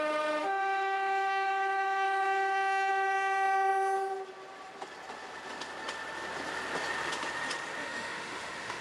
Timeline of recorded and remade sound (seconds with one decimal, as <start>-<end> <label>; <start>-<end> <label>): 0.0-0.4 recorded; 0.4-2.9 remade; 2.9-7.8 recorded; 7.8-8.8 remade